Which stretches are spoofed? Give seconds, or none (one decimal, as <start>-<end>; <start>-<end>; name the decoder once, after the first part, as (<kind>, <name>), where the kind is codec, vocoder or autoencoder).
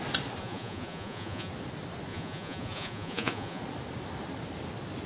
0.4-1.5 (vocoder, Vocos); 2.1-3.6